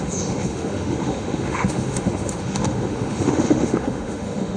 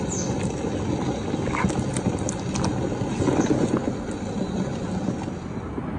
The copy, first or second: first